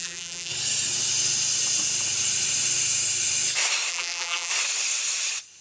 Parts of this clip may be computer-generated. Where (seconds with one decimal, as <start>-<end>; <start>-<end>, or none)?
0.0-0.5; 3.9-4.5